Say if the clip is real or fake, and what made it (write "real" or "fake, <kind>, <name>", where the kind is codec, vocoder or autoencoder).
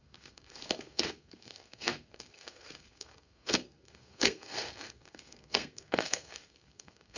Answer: fake, codec, SNAC